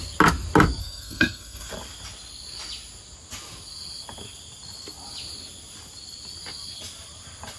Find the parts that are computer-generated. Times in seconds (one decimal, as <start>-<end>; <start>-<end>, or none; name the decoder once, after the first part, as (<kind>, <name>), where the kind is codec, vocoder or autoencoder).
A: 0.8-1.7 (codec, SNAC)